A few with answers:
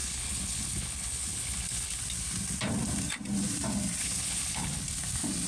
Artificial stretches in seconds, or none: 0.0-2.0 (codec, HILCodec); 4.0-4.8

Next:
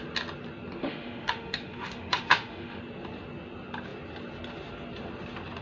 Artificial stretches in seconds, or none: 0.8-2.8 (autoencoder, DAC-VAE)

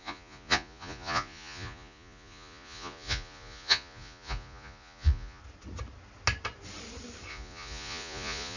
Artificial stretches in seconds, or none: 0.0-5.4 (vocoder, Vocos); 7.3-8.6

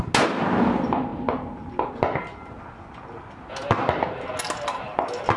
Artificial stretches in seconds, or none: none